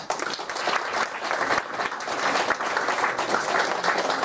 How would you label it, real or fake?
real